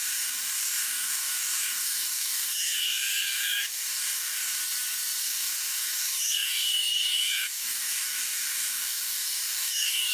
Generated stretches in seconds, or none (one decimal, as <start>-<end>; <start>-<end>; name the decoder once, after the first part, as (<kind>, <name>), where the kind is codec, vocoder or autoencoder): 0.0-4.6 (codec, DAC); 5.2-10.1